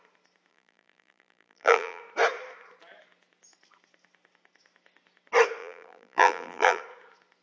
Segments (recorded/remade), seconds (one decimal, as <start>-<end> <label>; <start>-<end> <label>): 0.0-0.5 recorded; 0.5-2.0 remade; 2.0-5.6 recorded; 5.6-6.8 remade; 6.8-7.4 recorded